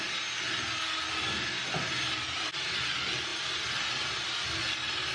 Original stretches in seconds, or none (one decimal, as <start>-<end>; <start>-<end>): 0.0-5.1